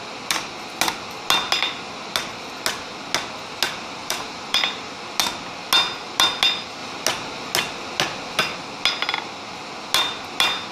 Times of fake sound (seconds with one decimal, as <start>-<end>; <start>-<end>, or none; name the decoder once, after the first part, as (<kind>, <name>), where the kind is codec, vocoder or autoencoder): 4.0-4.9 (vocoder, BigVGAN v2)